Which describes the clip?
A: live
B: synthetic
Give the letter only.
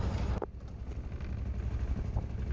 A